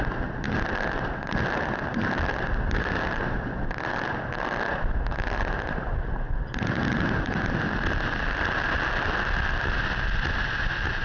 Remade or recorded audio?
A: recorded